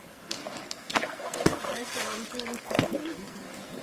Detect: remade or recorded remade